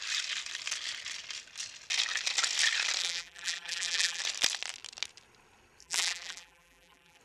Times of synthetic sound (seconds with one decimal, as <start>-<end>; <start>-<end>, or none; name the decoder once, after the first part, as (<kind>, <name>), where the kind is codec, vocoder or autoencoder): 3.0-4.2 (vocoder, BigVGAN v2); 5.8-7.2